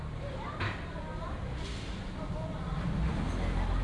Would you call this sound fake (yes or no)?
no